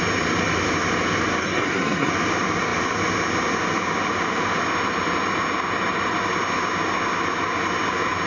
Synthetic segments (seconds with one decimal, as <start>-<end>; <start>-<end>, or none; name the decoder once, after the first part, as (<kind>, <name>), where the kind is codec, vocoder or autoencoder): 1.4-2.1 (codec, SNAC)